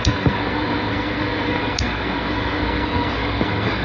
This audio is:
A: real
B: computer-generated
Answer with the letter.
B